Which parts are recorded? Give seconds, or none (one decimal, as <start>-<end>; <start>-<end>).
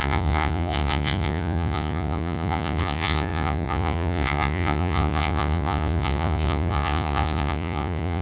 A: none